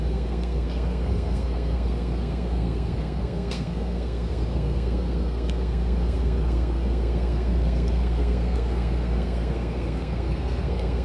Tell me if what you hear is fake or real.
fake